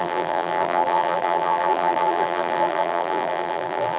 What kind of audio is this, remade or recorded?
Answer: remade